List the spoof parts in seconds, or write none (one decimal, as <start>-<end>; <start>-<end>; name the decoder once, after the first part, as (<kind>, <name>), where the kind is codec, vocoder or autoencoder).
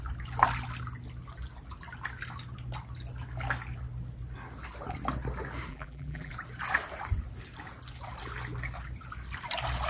5.7-6.3 (vocoder, BigVGAN v2)